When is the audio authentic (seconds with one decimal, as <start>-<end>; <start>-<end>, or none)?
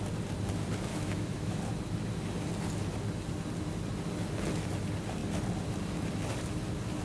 0.0-0.9; 1.6-7.0